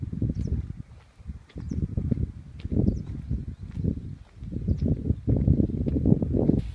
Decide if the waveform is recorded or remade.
recorded